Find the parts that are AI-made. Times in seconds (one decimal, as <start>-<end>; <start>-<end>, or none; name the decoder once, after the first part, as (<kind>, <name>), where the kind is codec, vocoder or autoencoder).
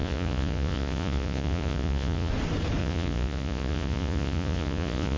0.0-2.3 (vocoder, Vocos); 2.8-5.2